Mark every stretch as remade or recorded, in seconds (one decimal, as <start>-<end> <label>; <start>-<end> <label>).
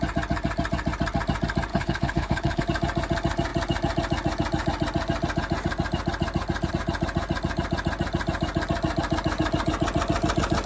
0.0-1.7 recorded; 1.7-2.6 remade; 2.6-10.7 recorded